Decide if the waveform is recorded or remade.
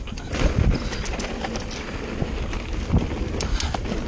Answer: recorded